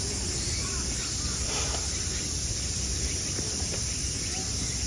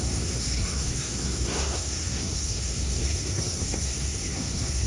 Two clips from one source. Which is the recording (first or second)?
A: first